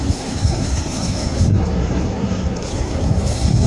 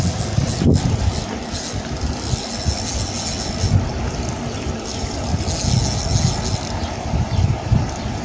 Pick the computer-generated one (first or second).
first